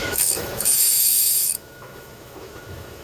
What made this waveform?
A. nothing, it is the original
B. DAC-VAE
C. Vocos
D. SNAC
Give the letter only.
B